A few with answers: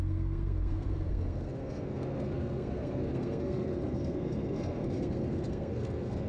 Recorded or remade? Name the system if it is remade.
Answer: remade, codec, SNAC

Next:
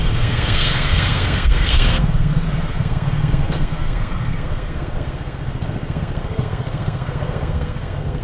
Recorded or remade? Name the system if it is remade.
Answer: remade, codec, SNAC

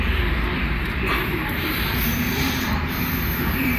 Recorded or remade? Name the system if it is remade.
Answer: remade, vocoder, BigVGAN v2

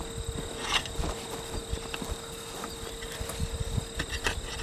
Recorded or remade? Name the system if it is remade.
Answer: recorded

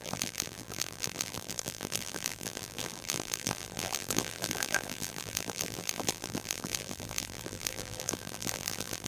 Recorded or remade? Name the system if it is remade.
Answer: remade, vocoder, BigVGAN v2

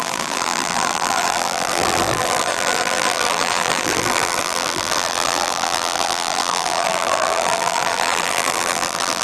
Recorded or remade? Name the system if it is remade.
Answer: remade, vocoder, BigVGAN v2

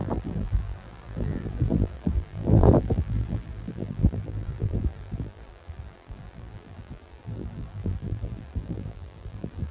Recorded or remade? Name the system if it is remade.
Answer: remade, vocoder, BigVGAN v2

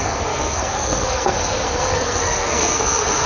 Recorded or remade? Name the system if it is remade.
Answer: remade, codec, SNAC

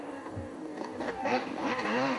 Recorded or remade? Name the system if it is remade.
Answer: remade, codec, DAC